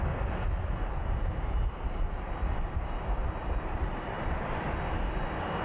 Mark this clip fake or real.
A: real